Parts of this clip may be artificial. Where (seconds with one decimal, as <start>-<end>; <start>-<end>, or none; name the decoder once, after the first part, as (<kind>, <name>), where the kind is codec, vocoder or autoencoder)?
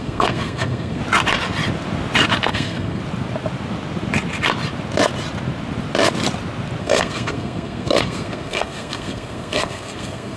0.0-1.0 (codec, SNAC); 2.5-3.0; 6.8-10.4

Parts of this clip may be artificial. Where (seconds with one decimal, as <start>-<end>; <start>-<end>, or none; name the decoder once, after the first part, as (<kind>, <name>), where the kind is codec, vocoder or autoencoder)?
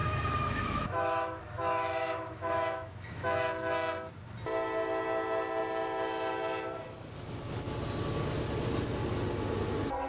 0.0-4.1 (autoencoder, DAC-VAE)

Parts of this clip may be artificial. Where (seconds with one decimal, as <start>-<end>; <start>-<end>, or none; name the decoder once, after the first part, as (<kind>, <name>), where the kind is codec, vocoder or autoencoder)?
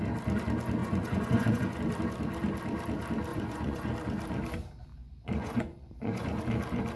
0.8-1.8 (vocoder, Vocos); 3.3-3.9; 4.9-6.4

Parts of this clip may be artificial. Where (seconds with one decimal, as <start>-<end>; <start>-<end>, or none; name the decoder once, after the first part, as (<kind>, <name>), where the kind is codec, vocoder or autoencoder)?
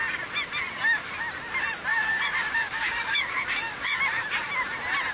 1.9-4.0 (codec, DAC)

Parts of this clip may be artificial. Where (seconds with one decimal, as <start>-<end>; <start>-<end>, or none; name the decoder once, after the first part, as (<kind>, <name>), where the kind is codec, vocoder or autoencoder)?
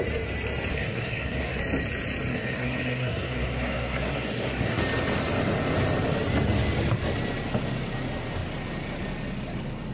0.7-1.6 (codec, SNAC); 2.3-4.8